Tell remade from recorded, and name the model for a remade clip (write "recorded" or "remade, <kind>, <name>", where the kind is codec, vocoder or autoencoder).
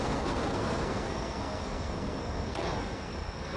remade, codec, SNAC